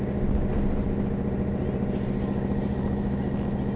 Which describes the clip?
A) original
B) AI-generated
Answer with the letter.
A